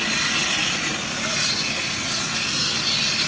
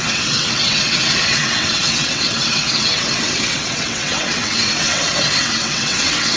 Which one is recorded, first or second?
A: first